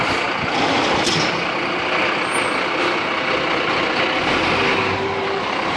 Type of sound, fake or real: real